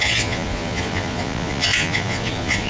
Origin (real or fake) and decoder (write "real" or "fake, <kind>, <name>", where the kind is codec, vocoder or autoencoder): fake, vocoder, Vocos